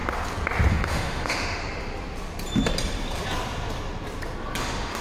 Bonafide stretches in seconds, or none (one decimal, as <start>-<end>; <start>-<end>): 0.0-0.7; 1.6-4.6